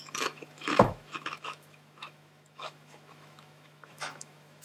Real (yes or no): no